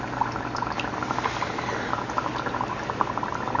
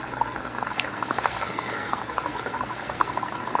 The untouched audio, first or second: first